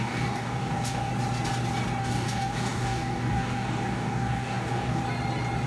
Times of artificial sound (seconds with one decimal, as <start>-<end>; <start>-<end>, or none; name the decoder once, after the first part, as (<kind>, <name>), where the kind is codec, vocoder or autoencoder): 0.0-1.1 (codec, DAC); 2.0-5.0